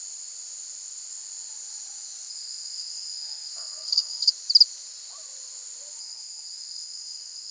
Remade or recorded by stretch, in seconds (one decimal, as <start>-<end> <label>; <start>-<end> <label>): 0.0-2.3 recorded; 2.3-4.3 remade; 4.3-6.0 recorded; 6.0-7.5 remade